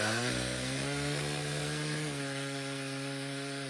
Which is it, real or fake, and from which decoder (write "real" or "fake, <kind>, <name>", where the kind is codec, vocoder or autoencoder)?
fake, codec, SNAC